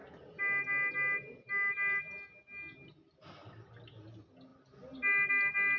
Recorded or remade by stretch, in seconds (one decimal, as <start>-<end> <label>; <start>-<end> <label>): 0.0-5.8 recorded